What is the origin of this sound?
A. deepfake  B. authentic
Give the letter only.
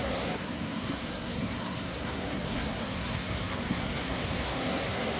A